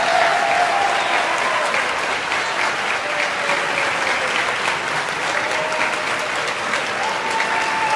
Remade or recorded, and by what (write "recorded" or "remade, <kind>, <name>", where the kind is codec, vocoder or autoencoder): recorded